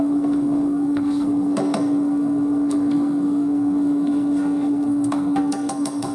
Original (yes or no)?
no